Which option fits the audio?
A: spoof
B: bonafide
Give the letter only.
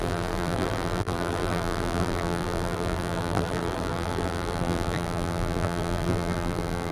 A